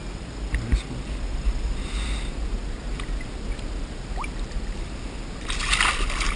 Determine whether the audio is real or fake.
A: real